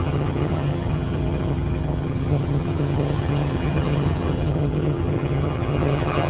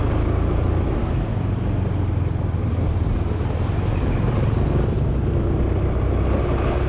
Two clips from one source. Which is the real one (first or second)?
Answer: second